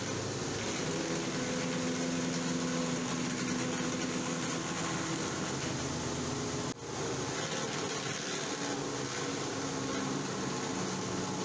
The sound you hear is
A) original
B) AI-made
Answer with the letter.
A